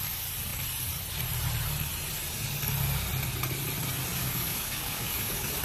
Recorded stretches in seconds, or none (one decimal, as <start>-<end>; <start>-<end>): 0.0-4.2